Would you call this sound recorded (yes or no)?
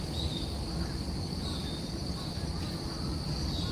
yes